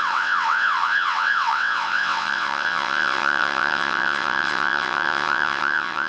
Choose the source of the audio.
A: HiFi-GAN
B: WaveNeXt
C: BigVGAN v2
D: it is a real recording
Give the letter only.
B